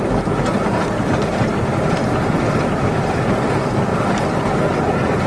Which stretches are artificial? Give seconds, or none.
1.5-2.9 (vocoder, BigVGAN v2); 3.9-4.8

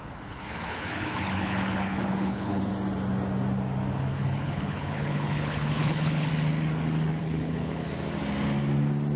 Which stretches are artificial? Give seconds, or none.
0.0-2.6 (codec, HILCodec); 4.1-6.3; 7.2-7.9

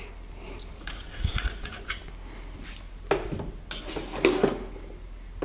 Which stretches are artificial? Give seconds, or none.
0.7-2.0 (vocoder, Vocos)

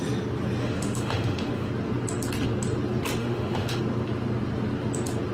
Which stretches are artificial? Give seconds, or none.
0.6-1.7 (autoencoder, DAC-VAE); 3.2-3.8

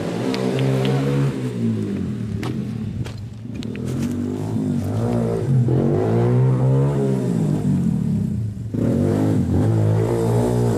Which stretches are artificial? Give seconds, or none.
9.1-9.7 (codec, DAC)

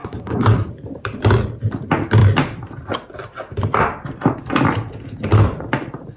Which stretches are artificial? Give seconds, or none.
0.0-0.7 (codec, SNAC)

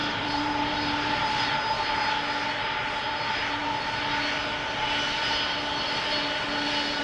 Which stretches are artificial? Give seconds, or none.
0.0-1.4 (vocoder, BigVGAN v2)